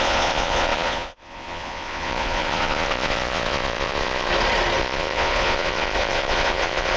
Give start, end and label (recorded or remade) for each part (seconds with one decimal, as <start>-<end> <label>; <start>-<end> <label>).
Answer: 0.0-4.3 remade; 4.3-4.8 recorded; 4.8-7.0 remade